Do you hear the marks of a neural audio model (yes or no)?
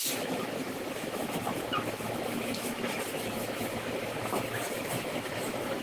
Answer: yes